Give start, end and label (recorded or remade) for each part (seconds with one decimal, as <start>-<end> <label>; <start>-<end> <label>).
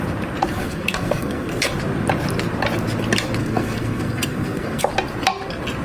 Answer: 0.0-0.4 recorded; 0.4-1.7 remade; 1.7-3.4 recorded; 3.4-4.8 remade; 4.8-5.8 recorded